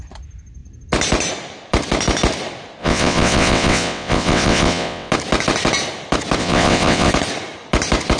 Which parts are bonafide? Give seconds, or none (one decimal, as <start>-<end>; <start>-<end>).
0.0-2.8; 5.1-6.4; 7.1-8.2